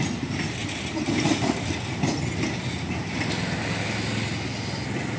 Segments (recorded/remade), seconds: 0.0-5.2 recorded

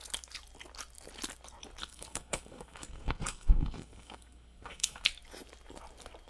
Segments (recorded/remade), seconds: 0.0-1.8 recorded; 1.8-5.1 remade; 5.1-6.3 recorded

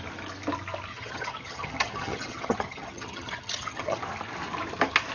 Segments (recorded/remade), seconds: 0.0-0.9 recorded; 0.9-4.0 remade; 4.0-5.1 recorded